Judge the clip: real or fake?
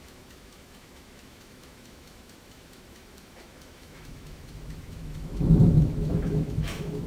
fake